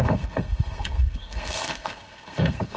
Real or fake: fake